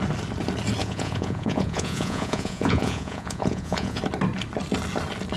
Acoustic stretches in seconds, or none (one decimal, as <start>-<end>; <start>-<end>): 0.0-0.8; 4.0-5.4